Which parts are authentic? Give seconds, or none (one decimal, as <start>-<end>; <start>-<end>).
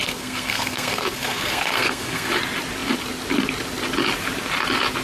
2.3-5.0